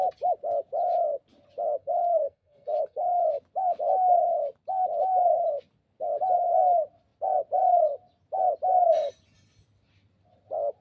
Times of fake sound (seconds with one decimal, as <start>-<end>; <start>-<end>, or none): 1.8-3.2